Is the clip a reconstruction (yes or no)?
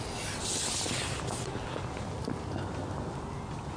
no